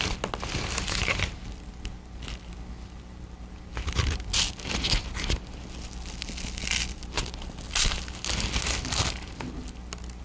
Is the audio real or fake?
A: real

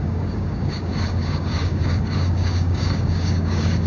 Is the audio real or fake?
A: fake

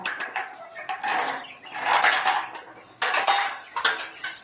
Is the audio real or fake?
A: real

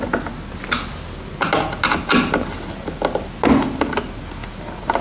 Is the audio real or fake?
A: real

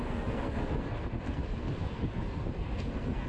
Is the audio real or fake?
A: fake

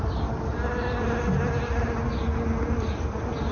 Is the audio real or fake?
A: real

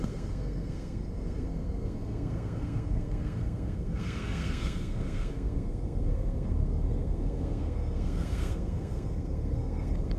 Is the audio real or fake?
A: fake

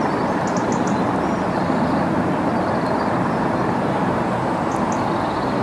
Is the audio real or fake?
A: real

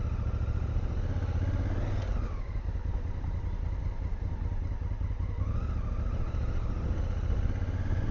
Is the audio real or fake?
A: real